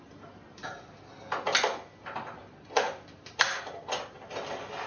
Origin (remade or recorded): recorded